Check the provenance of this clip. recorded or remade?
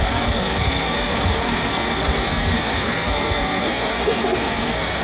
remade